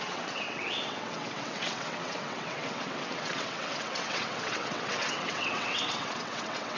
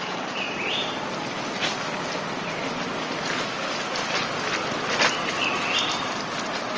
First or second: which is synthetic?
first